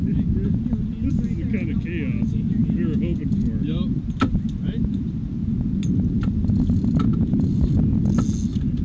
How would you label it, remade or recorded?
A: recorded